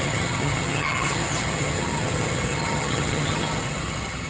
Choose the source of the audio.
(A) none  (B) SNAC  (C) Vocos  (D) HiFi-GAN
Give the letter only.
D